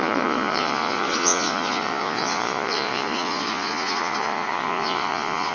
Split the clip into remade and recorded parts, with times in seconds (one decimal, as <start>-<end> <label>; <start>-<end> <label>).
0.0-5.5 remade